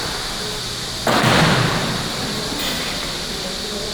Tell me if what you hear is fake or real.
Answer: real